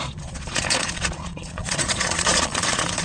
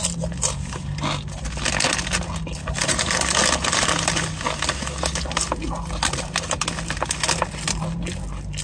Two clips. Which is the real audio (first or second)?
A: second